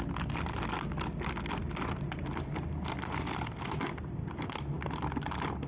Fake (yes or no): no